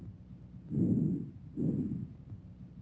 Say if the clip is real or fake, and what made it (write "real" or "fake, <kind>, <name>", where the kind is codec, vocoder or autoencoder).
real